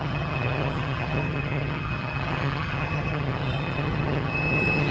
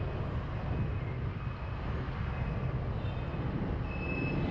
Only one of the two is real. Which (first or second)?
second